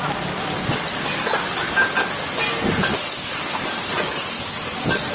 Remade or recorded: recorded